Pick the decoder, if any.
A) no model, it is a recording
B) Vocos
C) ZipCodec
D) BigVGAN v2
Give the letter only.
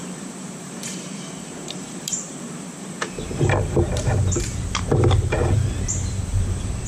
D